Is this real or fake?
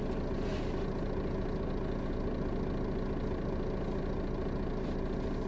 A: real